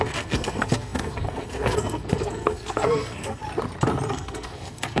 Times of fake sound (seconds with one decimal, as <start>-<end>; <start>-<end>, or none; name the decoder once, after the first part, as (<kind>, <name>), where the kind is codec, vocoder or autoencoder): 0.0-3.4 (codec, SNAC); 4.1-5.0